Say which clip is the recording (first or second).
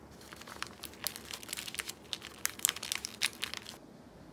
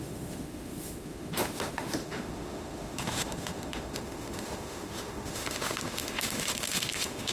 first